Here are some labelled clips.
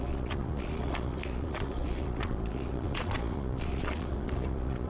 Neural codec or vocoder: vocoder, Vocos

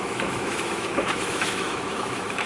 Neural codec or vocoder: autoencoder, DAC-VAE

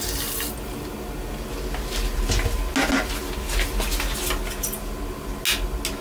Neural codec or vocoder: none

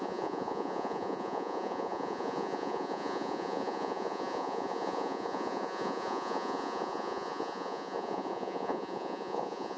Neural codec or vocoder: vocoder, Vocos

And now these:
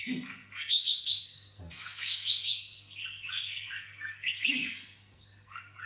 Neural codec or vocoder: codec, SNAC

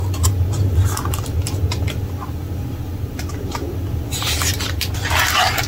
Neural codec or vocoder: none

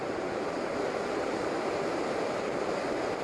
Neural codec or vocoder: none